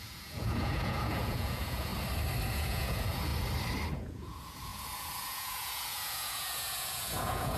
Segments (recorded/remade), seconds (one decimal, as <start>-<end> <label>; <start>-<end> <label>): 0.0-1.9 remade; 1.9-2.5 recorded; 2.5-3.3 remade; 3.3-3.9 recorded; 3.9-7.6 remade